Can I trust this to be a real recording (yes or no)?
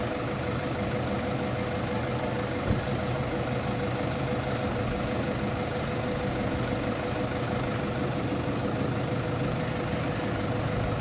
yes